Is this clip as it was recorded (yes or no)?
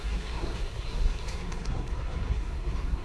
no